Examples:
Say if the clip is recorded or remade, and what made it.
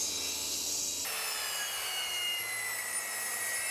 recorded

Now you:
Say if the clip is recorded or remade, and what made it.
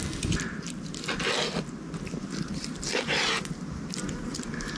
recorded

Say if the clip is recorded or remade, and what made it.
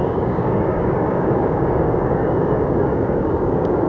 remade, codec, DAC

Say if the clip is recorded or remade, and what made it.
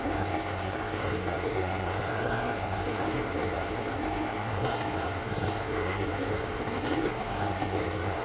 remade, codec, SNAC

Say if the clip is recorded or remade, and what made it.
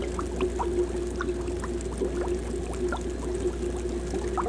recorded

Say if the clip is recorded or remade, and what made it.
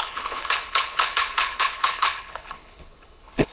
remade, codec, HILCodec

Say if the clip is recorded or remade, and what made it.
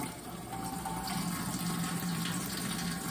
recorded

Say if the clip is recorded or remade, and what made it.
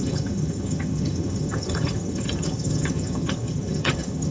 remade, vocoder, HiFi-GAN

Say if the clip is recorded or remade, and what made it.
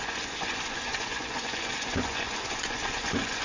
remade, vocoder, Vocos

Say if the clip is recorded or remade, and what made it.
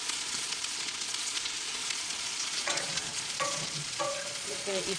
remade, vocoder, Vocos